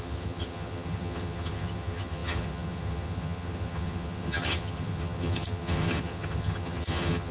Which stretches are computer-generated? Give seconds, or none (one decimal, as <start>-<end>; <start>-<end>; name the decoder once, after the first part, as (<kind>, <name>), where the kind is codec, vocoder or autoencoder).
0.0-7.3 (vocoder, HiFi-GAN)